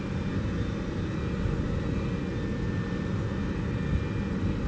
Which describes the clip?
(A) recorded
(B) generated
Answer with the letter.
A